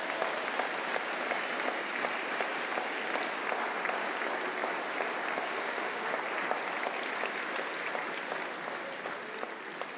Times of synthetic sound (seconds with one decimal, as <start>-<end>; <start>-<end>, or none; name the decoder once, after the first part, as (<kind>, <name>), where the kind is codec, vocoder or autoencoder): 5.5-6.1 (autoencoder, DAC-VAE)